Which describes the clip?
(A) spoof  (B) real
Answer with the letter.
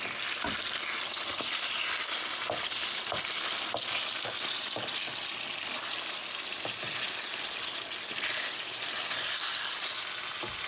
B